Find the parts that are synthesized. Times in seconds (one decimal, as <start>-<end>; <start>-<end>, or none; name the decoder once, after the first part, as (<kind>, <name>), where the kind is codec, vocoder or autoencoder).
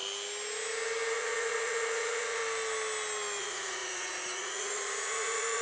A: 1.1-2.4 (vocoder, Vocos); 3.4-5.6